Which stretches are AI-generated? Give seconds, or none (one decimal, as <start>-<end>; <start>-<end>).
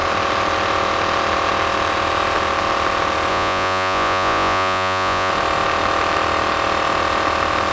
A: 3.3-5.3